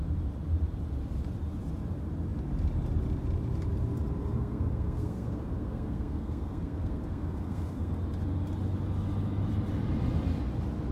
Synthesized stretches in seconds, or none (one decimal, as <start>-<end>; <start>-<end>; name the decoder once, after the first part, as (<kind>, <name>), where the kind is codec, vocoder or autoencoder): 4.2-7.9 (codec, SNAC)